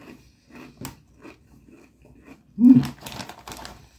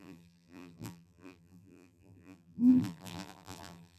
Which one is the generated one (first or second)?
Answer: second